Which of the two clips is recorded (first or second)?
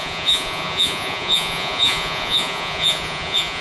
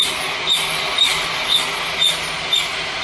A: second